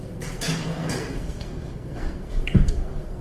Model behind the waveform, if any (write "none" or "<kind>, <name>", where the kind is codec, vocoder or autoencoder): codec, SNAC